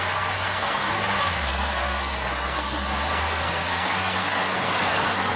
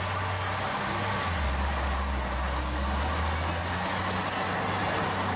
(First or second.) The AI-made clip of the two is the first